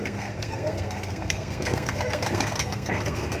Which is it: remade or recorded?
remade